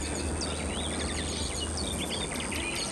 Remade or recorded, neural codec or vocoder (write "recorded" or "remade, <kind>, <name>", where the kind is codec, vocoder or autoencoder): recorded